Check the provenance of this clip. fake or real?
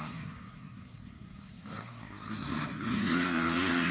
fake